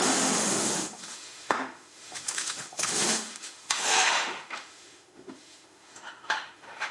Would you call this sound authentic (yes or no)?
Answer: no